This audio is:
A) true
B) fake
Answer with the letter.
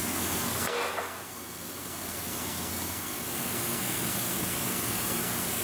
B